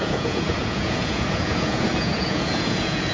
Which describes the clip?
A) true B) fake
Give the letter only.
B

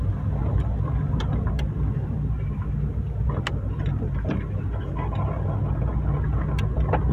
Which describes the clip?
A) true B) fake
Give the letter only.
A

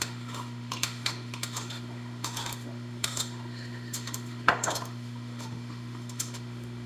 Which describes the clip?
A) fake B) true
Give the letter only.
A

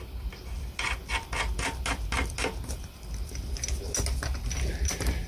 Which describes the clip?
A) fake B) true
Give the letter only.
B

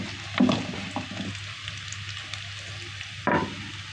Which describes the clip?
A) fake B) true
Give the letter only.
B